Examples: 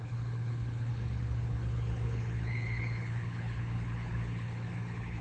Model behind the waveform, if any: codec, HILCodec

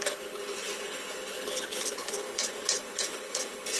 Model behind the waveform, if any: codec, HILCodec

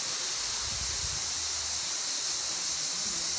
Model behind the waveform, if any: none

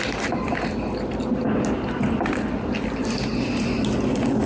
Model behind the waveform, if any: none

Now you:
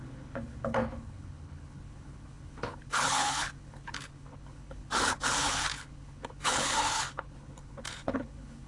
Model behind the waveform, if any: codec, HILCodec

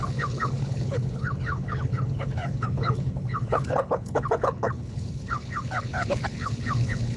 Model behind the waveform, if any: codec, HILCodec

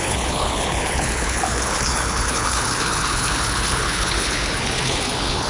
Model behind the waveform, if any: codec, HILCodec